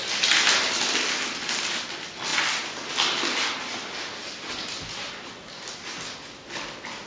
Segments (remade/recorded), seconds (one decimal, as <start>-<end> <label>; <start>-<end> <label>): 0.0-7.1 recorded